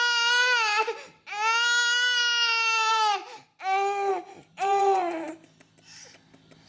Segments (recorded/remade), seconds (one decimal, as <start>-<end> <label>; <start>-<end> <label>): 0.0-2.9 recorded; 2.9-3.4 remade; 3.4-4.1 recorded; 4.1-5.3 remade; 5.3-6.7 recorded